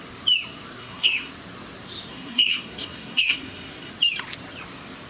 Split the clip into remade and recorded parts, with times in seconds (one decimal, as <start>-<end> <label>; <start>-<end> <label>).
0.0-0.8 recorded; 0.8-1.3 remade; 1.3-2.1 recorded; 2.1-3.9 remade; 3.9-5.1 recorded